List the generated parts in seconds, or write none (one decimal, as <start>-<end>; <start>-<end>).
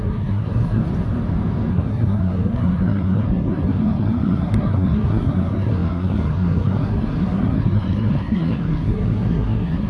0.0-0.8; 1.7-9.9